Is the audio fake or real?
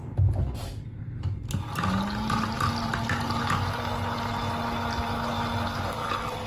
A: real